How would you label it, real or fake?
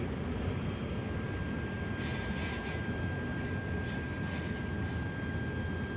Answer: real